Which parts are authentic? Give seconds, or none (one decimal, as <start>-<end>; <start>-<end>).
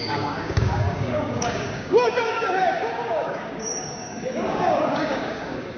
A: none